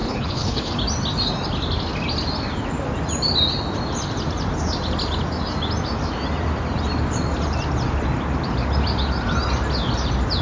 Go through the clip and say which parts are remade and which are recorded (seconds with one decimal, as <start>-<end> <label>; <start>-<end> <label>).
0.0-0.7 remade; 0.7-10.4 recorded